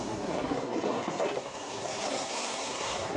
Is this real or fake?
fake